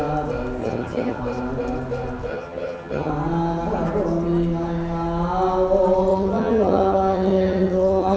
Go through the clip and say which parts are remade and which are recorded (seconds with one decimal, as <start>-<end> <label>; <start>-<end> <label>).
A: 0.0-0.6 recorded; 0.6-1.2 remade; 1.2-2.3 recorded; 2.3-3.1 remade; 3.1-6.1 recorded; 6.1-8.2 remade